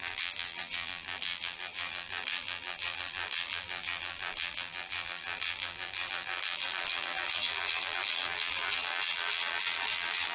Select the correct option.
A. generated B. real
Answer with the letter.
A